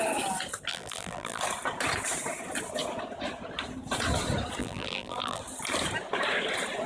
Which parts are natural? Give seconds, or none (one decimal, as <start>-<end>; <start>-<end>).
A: 0.0-0.7; 1.4-4.6; 5.4-6.9